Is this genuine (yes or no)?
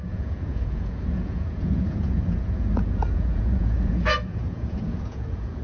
no